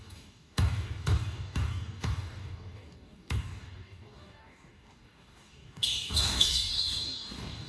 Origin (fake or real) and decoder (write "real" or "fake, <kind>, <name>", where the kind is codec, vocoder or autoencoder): fake, codec, DAC